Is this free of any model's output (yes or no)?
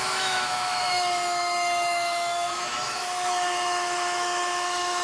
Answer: no